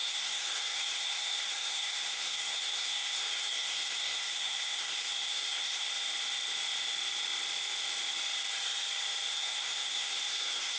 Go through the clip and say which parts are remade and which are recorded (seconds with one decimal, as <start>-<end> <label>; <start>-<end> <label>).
0.0-5.9 remade; 5.9-9.3 recorded; 9.3-10.8 remade